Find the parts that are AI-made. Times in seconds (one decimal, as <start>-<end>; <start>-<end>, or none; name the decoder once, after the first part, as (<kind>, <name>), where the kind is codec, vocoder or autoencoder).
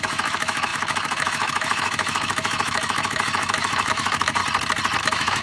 0.0-4.4 (autoencoder, DAC-VAE); 5.0-5.4